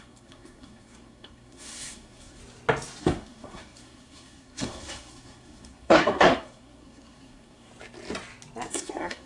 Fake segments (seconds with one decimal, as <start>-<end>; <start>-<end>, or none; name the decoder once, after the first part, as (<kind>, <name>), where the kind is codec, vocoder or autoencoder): 0.0-2.4 (codec, SNAC); 3.0-7.7; 8.7-9.3